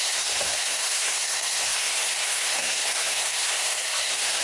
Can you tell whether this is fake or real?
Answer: fake